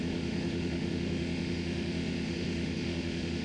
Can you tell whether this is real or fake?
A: fake